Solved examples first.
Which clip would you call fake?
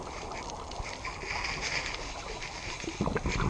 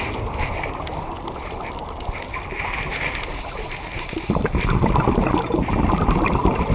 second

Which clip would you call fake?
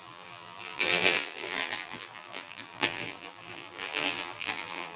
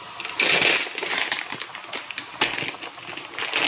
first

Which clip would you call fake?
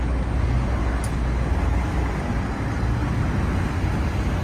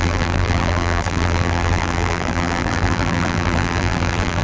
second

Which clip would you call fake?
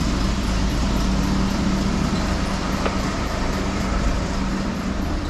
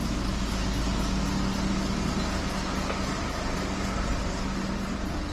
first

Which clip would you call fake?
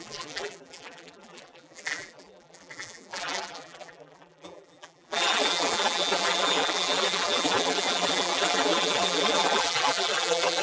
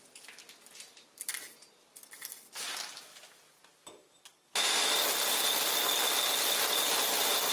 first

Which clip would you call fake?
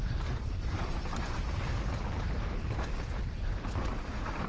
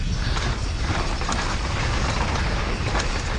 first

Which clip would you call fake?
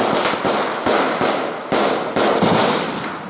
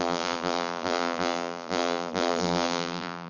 second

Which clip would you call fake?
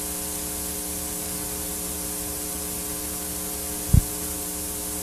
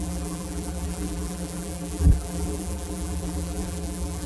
second